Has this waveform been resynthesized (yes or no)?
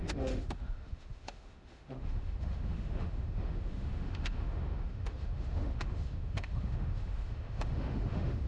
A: yes